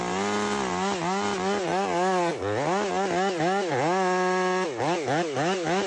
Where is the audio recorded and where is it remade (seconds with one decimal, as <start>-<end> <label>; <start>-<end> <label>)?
0.0-5.9 recorded